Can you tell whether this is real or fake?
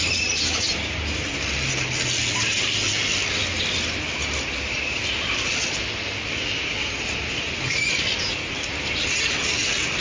real